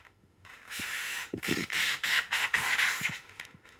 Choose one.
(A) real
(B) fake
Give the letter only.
B